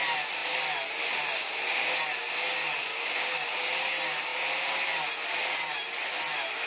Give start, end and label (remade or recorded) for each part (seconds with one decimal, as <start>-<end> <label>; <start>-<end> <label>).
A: 0.0-2.9 recorded; 2.9-3.5 remade; 3.5-6.7 recorded